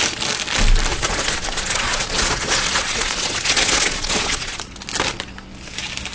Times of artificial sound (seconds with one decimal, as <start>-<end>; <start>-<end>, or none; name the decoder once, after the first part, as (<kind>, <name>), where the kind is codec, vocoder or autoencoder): 0.9-4.6 (vocoder, Vocos)